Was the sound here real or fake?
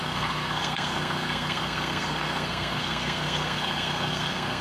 fake